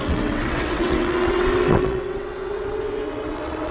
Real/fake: fake